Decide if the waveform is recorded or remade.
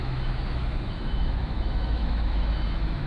remade